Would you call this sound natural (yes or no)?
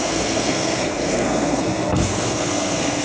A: no